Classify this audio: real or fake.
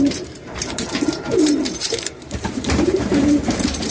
fake